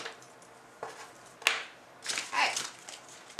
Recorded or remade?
recorded